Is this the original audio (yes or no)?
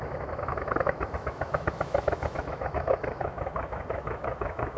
no